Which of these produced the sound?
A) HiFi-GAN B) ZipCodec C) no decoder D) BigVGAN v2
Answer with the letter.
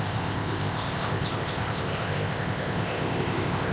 B